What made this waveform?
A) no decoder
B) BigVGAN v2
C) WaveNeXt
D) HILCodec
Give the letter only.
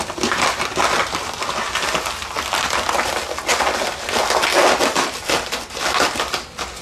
A